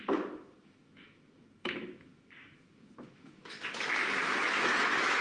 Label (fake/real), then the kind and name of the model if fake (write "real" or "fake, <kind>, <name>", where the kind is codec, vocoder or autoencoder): fake, autoencoder, DAC-VAE